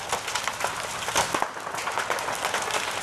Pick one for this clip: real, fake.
real